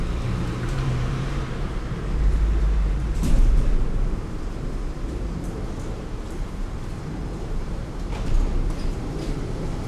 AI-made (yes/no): yes